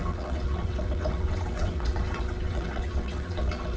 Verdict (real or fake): fake